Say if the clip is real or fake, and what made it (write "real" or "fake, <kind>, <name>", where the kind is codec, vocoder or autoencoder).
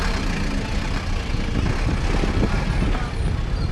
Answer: real